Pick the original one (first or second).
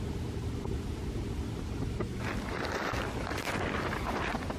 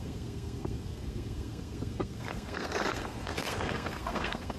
first